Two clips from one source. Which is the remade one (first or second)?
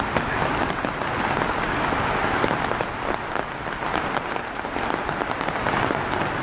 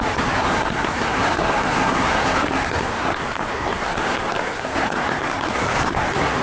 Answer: second